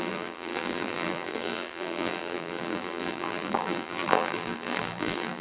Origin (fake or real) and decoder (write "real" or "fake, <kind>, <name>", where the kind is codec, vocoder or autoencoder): fake, vocoder, BigVGAN v2